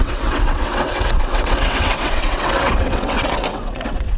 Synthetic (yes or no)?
yes